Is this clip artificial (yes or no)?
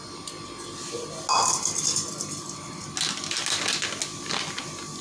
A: no